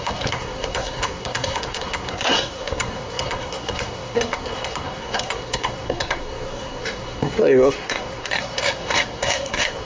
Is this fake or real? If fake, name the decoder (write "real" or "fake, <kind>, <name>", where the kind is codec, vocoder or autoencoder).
fake, codec, SNAC